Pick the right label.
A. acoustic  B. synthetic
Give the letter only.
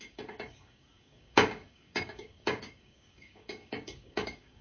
B